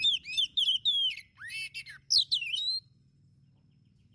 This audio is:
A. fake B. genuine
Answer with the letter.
B